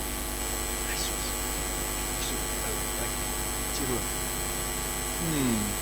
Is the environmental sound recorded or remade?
recorded